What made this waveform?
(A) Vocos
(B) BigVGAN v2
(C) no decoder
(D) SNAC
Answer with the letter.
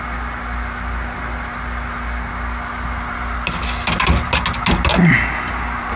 C